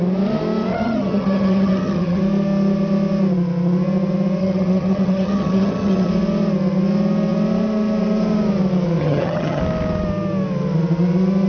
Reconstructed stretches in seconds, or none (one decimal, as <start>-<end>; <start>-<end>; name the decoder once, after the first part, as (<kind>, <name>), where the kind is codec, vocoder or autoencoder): 0.7-2.2 (vocoder, HiFi-GAN); 4.4-6.1; 9.0-9.6